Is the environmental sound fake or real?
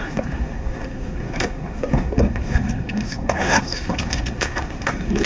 fake